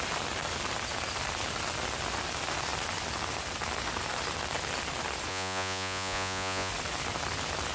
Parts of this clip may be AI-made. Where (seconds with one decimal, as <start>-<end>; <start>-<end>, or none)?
5.3-6.7